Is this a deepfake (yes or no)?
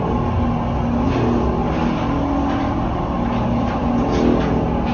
no